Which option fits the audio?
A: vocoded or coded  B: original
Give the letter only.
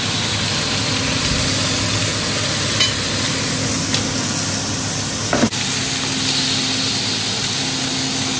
B